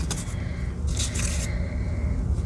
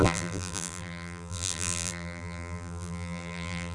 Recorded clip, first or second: first